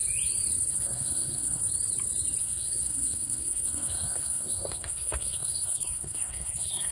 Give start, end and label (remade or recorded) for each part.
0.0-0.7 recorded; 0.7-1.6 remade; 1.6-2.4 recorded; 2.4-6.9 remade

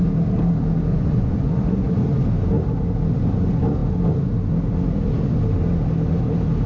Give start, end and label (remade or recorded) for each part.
0.0-0.9 recorded; 0.9-1.9 remade; 1.9-6.7 recorded